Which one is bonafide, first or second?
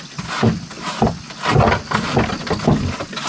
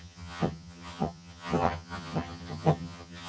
first